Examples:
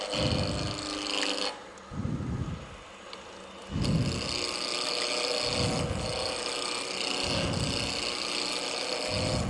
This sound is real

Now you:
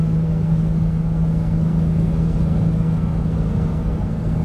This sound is fake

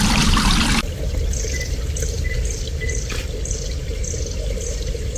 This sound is real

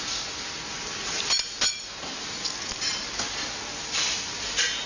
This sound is real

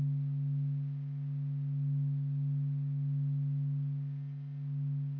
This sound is real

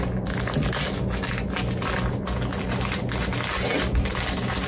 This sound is real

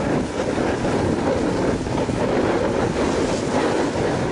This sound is real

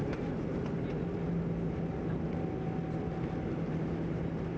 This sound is real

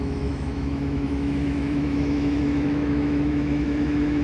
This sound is fake